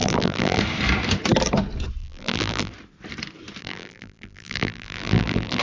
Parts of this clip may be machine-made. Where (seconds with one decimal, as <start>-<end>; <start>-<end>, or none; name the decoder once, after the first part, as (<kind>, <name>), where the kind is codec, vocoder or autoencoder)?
0.0-0.6 (vocoder, BigVGAN v2); 2.0-2.7; 3.6-5.6